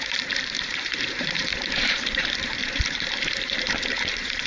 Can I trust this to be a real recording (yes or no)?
no